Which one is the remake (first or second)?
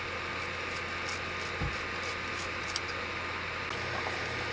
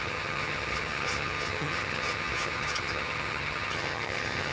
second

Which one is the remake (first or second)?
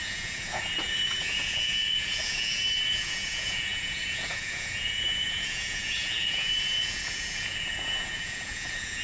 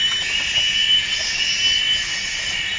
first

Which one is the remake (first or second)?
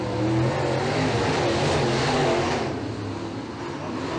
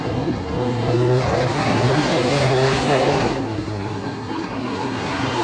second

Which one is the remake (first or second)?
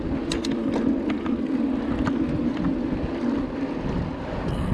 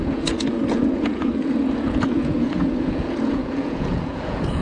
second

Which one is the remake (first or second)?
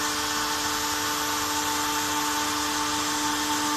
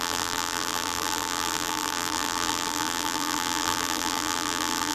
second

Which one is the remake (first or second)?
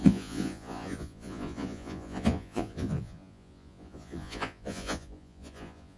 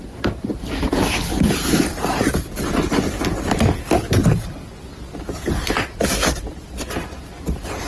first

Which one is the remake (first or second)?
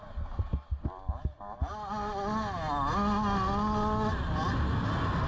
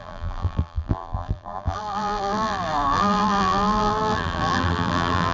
second